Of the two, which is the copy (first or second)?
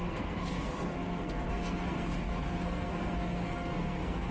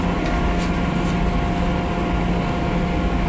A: first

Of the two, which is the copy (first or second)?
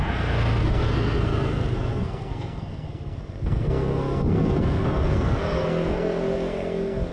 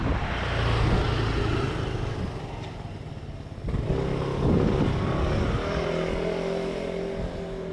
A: first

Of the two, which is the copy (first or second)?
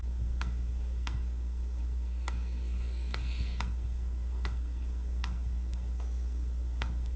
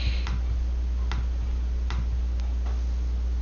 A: first